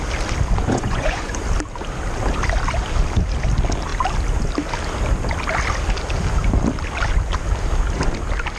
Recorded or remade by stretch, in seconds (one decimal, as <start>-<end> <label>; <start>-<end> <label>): 0.0-0.6 recorded; 0.6-1.4 remade; 1.4-8.6 recorded